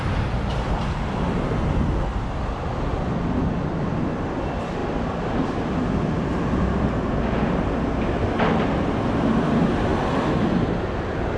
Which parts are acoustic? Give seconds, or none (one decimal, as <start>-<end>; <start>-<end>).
0.0-11.4